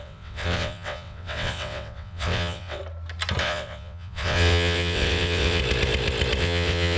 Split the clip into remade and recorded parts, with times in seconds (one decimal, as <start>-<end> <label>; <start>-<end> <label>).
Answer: 0.0-2.8 remade; 2.8-3.4 recorded; 3.4-5.6 remade; 5.6-6.4 recorded; 6.4-7.0 remade